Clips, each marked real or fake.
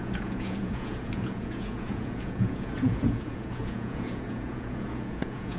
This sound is fake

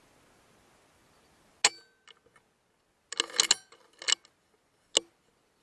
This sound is real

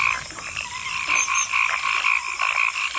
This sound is fake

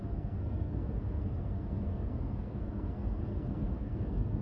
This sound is fake